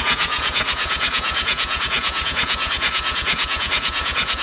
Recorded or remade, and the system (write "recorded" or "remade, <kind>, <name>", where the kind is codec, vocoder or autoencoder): remade, vocoder, Vocos